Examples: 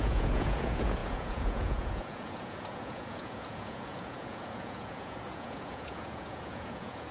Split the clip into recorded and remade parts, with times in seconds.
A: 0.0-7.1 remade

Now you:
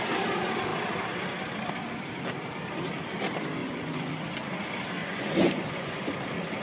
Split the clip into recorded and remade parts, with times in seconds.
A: 0.0-3.6 recorded; 3.6-4.1 remade; 4.1-5.0 recorded; 5.0-6.1 remade; 6.1-6.6 recorded

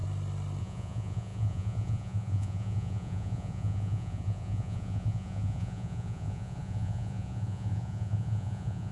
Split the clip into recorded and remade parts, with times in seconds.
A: 0.0-0.6 recorded; 0.6-8.9 remade

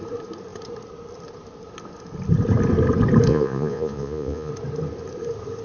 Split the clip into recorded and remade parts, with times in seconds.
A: 0.0-3.3 recorded; 3.3-4.5 remade; 4.5-5.6 recorded

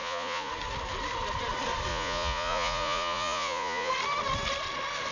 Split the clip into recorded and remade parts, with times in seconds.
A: 0.0-0.5 remade; 0.5-1.9 recorded; 1.9-3.9 remade; 3.9-5.1 recorded